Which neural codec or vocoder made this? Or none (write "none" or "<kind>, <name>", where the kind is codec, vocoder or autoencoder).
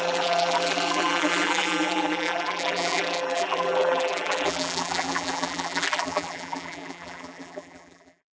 vocoder, BigVGAN v2